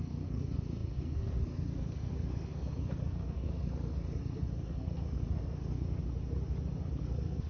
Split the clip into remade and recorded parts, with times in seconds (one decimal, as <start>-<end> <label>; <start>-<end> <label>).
0.0-6.0 remade; 6.0-7.0 recorded; 7.0-7.5 remade